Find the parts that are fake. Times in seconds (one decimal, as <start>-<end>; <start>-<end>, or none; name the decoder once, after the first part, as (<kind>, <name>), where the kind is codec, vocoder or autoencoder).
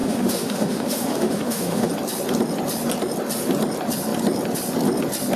0.0-1.9 (autoencoder, DAC-VAE)